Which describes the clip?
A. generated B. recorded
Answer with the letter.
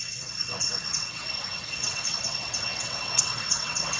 A